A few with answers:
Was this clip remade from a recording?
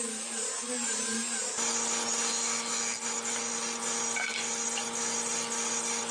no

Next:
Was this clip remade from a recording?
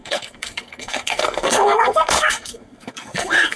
yes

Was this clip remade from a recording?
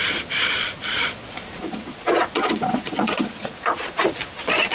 yes